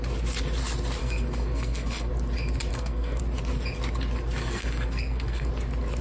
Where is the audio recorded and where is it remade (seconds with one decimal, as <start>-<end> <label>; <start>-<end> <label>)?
0.0-1.0 recorded; 1.0-2.1 remade; 2.1-2.7 recorded; 2.7-3.2 remade; 3.2-4.4 recorded; 4.4-5.5 remade; 5.5-6.0 recorded